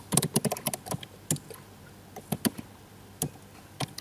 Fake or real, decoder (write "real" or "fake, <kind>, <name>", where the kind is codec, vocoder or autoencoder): real